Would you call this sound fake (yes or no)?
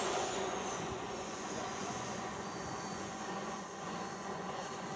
yes